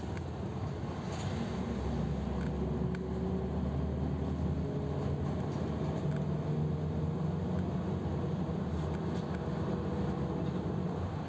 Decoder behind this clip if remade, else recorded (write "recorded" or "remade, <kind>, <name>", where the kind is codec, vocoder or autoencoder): recorded